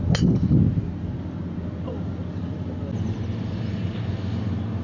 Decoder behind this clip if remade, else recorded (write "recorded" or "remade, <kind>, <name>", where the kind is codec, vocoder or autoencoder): recorded